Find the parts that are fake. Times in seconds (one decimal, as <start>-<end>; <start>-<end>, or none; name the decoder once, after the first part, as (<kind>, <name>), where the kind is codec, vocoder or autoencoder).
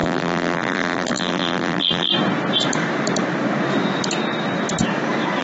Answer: 0.0-2.1 (vocoder, BigVGAN v2)